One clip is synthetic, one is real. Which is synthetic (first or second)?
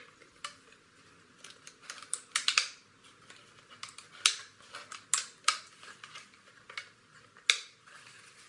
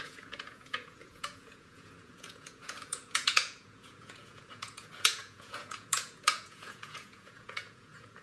second